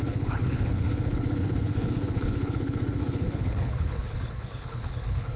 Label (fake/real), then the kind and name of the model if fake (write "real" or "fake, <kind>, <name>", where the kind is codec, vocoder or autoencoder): fake, codec, HILCodec